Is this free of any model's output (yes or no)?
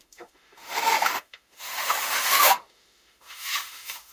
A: no